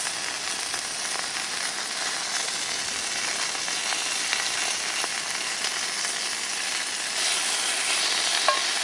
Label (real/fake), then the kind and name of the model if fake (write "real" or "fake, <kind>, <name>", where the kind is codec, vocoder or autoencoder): real